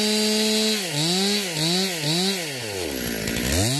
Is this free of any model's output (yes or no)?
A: yes